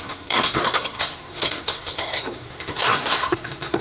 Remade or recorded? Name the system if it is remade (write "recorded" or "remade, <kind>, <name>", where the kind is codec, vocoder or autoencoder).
remade, codec, SNAC